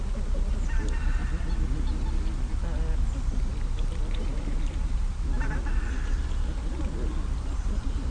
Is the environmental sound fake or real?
real